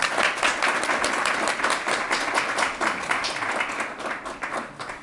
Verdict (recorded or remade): recorded